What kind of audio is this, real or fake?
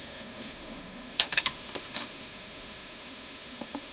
fake